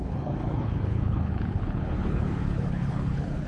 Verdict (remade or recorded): remade